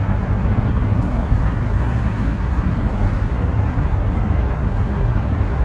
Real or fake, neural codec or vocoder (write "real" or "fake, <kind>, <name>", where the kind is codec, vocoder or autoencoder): fake, codec, SNAC